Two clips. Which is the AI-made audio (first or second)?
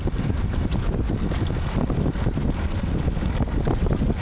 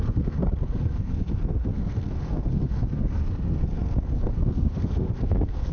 second